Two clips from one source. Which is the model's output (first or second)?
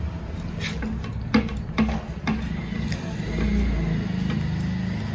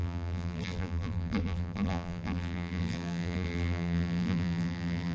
second